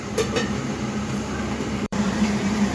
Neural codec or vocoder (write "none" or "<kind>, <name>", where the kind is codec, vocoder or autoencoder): vocoder, BigVGAN v2